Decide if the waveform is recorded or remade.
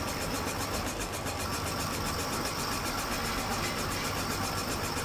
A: recorded